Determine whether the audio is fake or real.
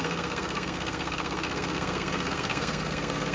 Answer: fake